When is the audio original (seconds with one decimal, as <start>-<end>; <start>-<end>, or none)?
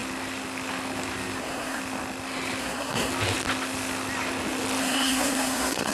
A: 0.0-1.4; 1.8-2.6; 3.1-4.8